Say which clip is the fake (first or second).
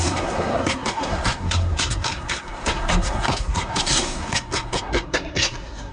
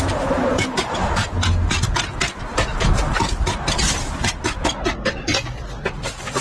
first